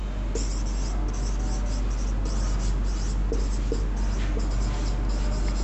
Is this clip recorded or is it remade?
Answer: recorded